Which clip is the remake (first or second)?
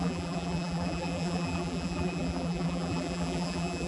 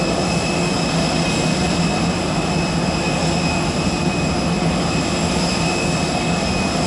first